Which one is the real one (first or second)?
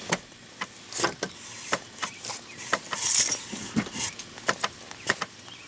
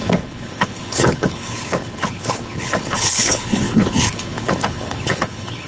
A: first